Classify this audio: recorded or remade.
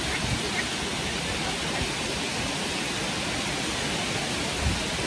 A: recorded